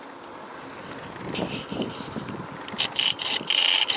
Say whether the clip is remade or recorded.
recorded